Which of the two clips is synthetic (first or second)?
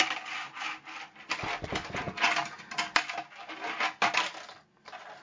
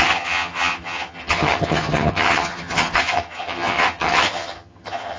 second